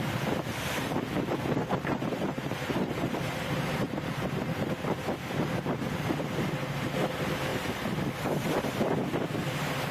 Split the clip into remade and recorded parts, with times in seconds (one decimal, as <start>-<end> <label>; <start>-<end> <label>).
0.0-1.6 recorded; 1.6-4.7 remade; 4.7-7.5 recorded; 7.5-8.8 remade; 8.8-9.9 recorded